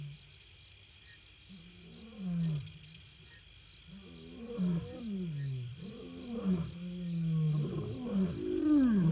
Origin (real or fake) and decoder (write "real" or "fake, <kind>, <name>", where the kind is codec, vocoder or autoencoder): real